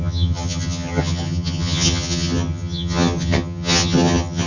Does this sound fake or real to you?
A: fake